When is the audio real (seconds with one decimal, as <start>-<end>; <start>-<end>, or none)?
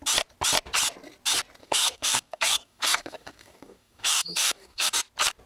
0.0-1.6; 4.9-5.5